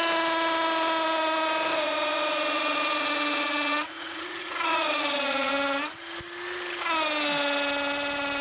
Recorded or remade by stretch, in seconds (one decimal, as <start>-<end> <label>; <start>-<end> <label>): 0.0-1.7 recorded; 1.7-5.5 remade; 5.5-8.4 recorded